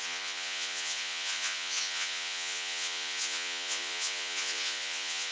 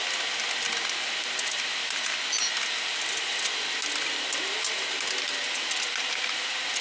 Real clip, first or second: second